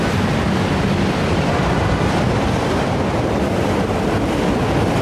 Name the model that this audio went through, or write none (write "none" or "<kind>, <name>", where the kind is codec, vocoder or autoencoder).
vocoder, BigVGAN v2